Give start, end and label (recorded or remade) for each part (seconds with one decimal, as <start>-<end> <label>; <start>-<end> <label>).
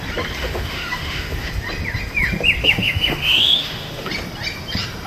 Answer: 0.0-0.4 recorded; 0.4-1.5 remade; 1.5-2.6 recorded; 2.6-4.1 remade; 4.1-5.1 recorded